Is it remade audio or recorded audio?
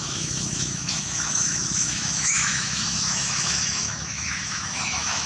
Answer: remade